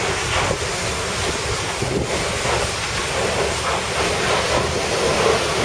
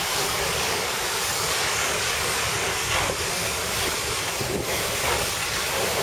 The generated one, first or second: second